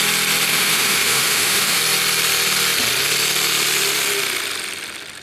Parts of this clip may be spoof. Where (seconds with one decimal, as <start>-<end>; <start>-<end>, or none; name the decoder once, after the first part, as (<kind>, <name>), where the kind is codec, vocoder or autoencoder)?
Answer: 0.5-1.8 (autoencoder, DAC-VAE)